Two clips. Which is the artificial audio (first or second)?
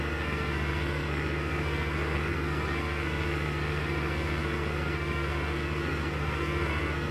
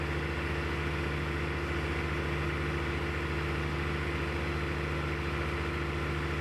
first